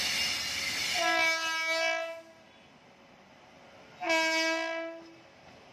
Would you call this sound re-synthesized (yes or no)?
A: no